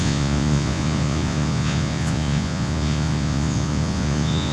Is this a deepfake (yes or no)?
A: yes